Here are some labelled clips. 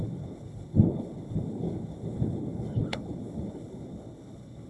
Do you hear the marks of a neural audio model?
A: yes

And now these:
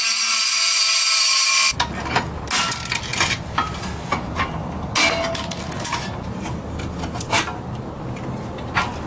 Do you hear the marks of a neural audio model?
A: no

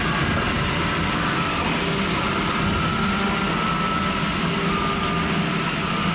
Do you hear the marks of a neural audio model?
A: no